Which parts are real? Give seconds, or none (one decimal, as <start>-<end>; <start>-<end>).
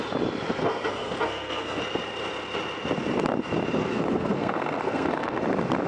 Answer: 0.0-0.6; 1.8-3.8; 5.4-5.9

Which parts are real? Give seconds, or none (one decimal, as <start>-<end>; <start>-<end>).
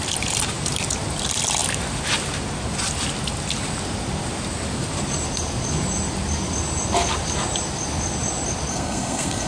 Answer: 0.0-8.7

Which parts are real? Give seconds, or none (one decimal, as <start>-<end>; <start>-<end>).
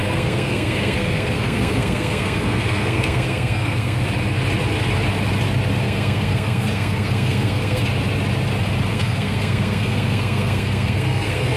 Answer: 4.0-5.8; 7.8-8.9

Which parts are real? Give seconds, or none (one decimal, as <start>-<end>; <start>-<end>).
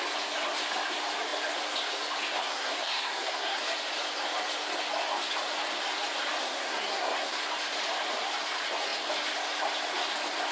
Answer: 0.0-2.4; 3.6-6.4; 7.4-10.5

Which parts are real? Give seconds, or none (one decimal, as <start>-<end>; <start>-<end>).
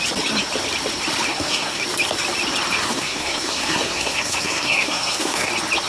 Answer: 0.0-1.3; 1.8-2.8; 5.5-5.9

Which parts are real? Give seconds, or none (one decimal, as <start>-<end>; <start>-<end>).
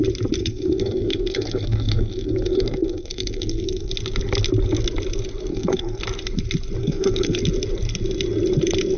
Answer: 0.0-0.4; 3.9-5.5; 6.0-6.8; 7.4-9.0